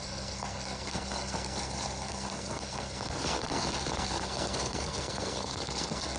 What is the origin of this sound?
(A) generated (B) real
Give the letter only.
A